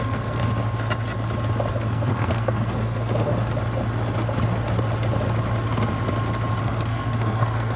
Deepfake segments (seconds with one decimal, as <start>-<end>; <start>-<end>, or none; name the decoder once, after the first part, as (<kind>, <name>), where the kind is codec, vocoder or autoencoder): 0.0-0.4 (codec, SNAC); 1.7-3.3; 6.6-7.8